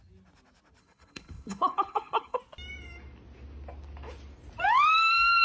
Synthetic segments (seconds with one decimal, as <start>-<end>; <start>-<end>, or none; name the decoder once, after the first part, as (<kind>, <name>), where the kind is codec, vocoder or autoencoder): 0.8-2.4 (codec, HILCodec)

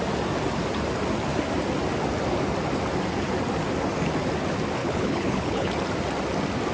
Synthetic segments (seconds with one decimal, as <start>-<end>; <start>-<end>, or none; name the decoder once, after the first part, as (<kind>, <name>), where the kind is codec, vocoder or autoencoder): 4.8-5.7 (codec, HILCodec)

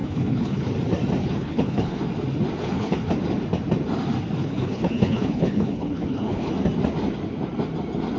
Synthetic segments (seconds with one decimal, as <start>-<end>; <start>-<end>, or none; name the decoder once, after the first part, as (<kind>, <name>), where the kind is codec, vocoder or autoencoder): 0.0-0.7 (codec, HILCodec); 1.2-2.0; 2.6-3.1; 4.4-6.5

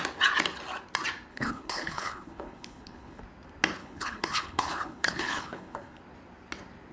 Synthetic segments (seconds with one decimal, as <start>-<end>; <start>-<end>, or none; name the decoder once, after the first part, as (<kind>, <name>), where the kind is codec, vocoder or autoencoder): 1.3-3.2 (codec, HILCodec); 3.8-6.0